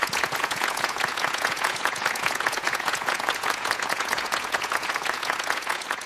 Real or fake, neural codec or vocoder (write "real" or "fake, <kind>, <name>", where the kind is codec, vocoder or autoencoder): fake, vocoder, Vocos